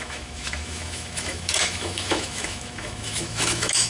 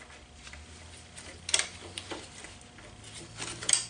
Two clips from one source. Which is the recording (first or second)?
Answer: second